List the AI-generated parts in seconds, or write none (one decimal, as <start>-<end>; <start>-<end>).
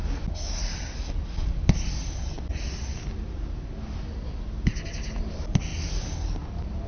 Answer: none